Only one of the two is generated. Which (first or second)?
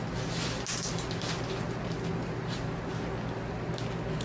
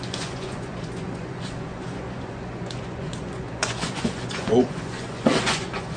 second